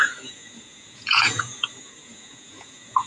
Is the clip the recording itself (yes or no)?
no